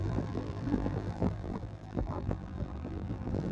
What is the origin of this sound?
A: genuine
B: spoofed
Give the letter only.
B